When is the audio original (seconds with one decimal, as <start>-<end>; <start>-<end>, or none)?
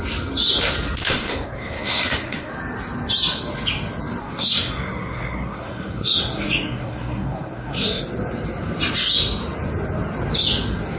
0.0-1.0; 2.5-4.2; 8.0-11.0